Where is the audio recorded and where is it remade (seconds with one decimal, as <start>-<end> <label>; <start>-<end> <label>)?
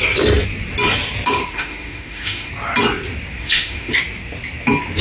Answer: 0.0-1.4 recorded; 1.4-2.5 remade; 2.5-3.4 recorded; 3.4-3.9 remade; 3.9-5.0 recorded